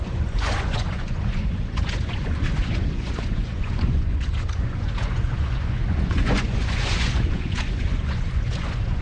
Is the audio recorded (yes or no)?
no